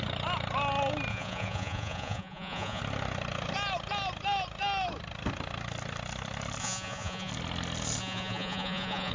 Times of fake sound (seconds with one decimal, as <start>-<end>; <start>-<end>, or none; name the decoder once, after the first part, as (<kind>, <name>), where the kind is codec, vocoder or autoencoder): 1.1-2.8 (vocoder, Vocos); 6.6-7.3; 8.0-9.1